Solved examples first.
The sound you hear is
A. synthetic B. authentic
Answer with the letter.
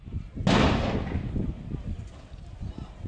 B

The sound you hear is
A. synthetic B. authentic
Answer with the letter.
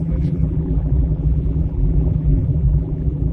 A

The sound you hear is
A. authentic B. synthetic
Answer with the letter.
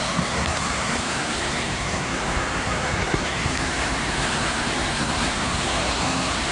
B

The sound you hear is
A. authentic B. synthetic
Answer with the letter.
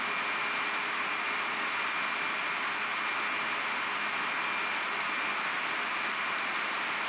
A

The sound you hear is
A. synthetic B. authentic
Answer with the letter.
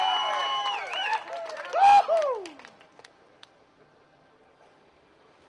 B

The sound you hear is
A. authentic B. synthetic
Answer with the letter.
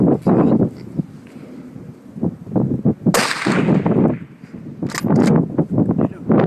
A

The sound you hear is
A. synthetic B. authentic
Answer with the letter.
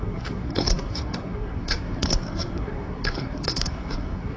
A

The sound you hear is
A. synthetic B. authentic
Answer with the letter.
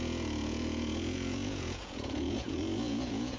A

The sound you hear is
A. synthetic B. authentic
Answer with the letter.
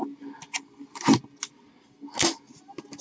B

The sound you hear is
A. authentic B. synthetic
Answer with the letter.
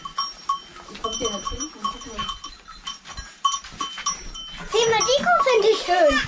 A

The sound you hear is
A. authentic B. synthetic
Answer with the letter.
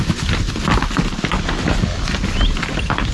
A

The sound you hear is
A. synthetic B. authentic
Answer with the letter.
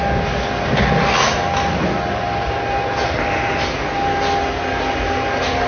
B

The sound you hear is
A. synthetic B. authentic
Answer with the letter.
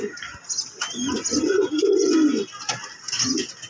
B